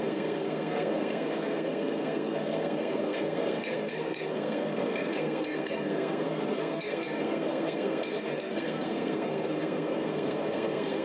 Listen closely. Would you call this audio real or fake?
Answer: fake